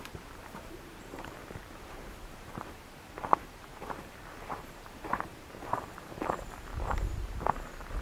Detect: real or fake fake